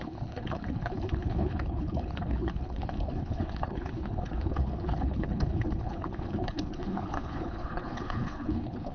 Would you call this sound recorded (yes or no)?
no